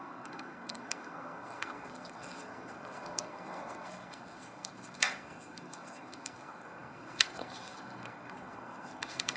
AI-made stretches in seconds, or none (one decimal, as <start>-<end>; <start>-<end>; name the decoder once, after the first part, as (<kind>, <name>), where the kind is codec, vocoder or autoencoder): 0.0-9.4 (codec, SNAC)